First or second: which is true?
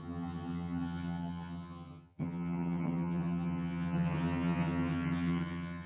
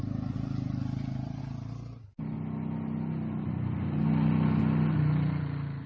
second